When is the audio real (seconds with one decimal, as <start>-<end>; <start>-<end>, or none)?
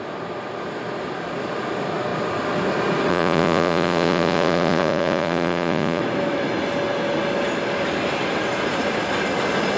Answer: 0.0-3.1; 6.0-9.8